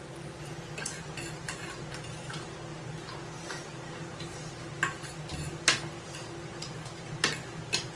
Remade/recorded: recorded